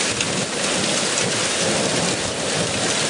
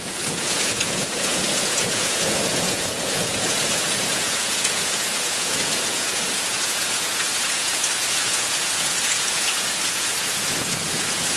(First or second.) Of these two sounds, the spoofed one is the second